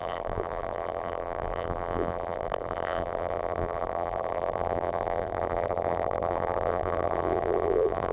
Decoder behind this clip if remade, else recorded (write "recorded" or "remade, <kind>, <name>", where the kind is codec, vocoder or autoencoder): remade, vocoder, BigVGAN v2